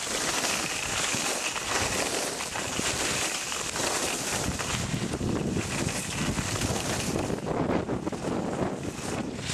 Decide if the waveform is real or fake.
real